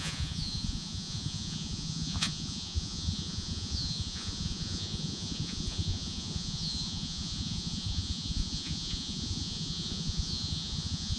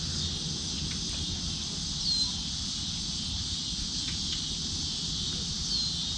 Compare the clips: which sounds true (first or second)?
second